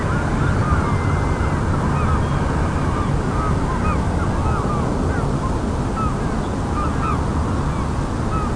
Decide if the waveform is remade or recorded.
recorded